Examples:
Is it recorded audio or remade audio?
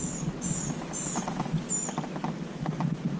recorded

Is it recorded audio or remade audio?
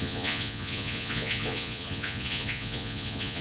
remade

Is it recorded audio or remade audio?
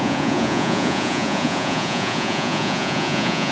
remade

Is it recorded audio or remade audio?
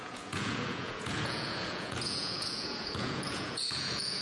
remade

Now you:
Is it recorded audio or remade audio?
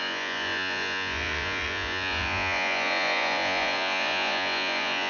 remade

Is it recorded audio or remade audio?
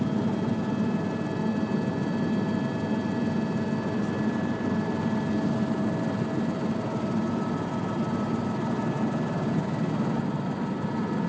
recorded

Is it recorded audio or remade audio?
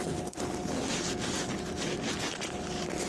recorded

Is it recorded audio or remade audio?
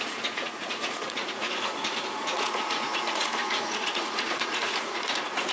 remade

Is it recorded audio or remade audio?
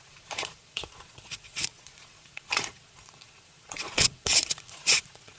remade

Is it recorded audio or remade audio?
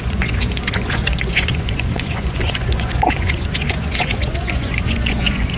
remade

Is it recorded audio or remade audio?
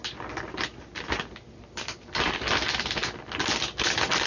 recorded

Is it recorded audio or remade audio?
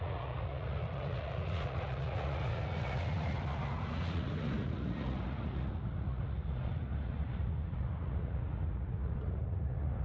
remade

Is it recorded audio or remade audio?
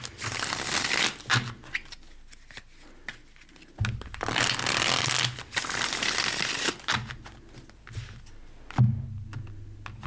recorded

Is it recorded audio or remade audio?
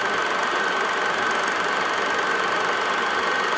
recorded